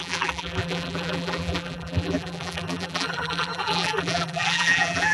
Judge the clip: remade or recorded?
remade